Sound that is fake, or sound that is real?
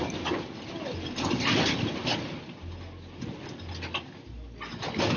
real